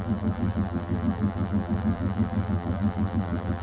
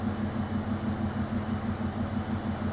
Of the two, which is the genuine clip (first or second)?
second